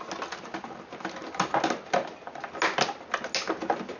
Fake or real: real